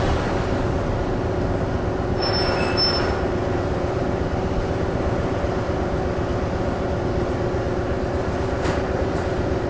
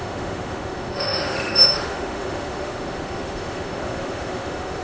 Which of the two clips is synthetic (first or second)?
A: second